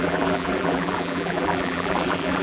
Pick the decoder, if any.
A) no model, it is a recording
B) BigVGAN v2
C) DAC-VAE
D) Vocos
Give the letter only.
B